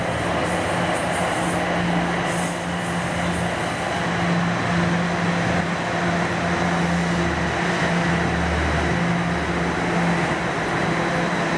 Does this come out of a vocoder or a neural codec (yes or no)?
no